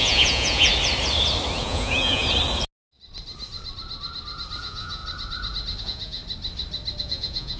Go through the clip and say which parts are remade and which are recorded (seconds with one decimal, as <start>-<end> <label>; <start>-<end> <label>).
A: 0.0-0.7 remade; 0.7-1.6 recorded; 1.6-2.2 remade; 2.2-4.6 recorded; 4.6-5.0 remade; 5.0-5.8 recorded; 5.8-6.2 remade; 6.2-7.0 recorded; 7.0-7.6 remade